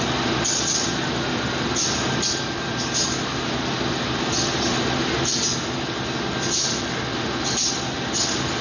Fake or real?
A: real